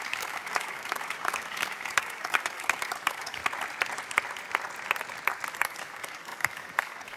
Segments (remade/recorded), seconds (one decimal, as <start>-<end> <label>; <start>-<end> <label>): 0.0-3.4 remade; 3.4-5.5 recorded; 5.5-7.2 remade